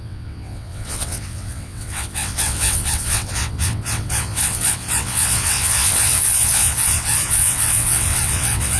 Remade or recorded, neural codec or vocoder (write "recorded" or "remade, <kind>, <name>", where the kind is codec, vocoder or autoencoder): remade, vocoder, WaveNeXt